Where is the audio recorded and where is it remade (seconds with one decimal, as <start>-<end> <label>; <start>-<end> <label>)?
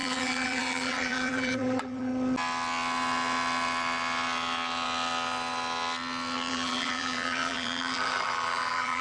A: 0.0-2.1 remade; 2.1-6.5 recorded; 6.5-9.0 remade